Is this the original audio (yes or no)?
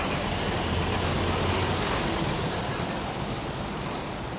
yes